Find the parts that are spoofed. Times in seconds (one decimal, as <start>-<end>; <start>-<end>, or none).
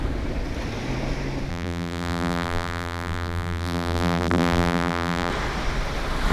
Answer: 1.5-5.3